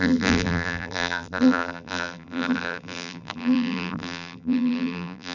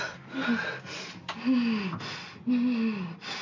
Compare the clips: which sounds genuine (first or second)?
second